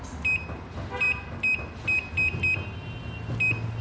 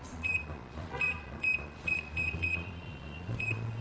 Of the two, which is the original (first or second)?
first